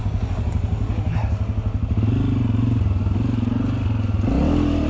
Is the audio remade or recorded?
recorded